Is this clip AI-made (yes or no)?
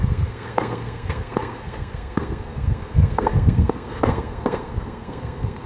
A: yes